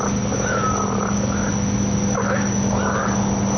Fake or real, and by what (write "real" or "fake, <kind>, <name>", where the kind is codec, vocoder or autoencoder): real